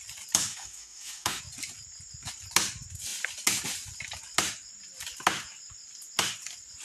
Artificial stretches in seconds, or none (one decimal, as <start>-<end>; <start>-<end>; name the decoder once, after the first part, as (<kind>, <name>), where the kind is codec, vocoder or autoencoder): 0.5-1.4 (autoencoder, DAC-VAE)